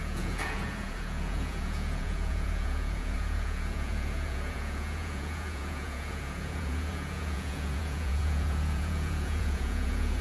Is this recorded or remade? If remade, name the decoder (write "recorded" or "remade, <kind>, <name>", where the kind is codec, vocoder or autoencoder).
remade, vocoder, Vocos